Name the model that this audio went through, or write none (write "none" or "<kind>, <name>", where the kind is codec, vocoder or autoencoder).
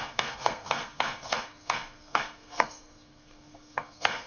codec, SNAC